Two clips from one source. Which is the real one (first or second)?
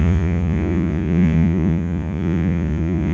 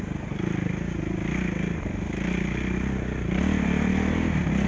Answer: second